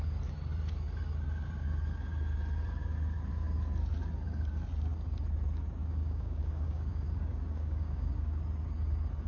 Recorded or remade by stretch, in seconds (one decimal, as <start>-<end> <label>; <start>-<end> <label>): 0.0-6.0 recorded; 6.0-8.4 remade; 8.4-9.3 recorded